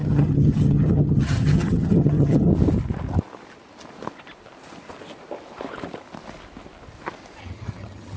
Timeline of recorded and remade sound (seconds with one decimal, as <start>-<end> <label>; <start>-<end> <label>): 0.0-2.5 remade; 2.5-7.4 recorded; 7.4-8.2 remade